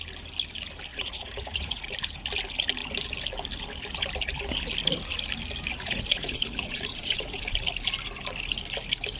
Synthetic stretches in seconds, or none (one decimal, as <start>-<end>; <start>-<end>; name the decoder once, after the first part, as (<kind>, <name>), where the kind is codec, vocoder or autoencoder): 0.9-1.9 (vocoder, Vocos); 5.7-7.4